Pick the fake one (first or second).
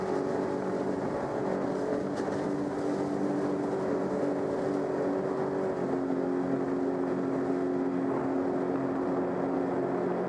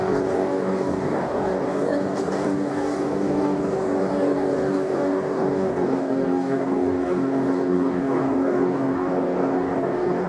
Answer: second